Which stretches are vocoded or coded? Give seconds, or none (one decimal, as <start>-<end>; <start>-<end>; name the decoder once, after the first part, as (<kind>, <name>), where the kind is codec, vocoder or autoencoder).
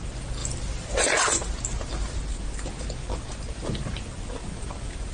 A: none